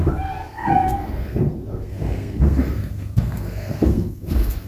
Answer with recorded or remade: remade